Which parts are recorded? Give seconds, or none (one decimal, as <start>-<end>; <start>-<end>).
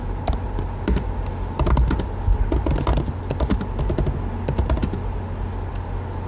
0.0-6.3